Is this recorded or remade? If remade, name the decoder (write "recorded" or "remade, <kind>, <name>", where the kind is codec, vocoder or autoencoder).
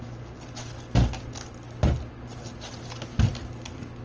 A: recorded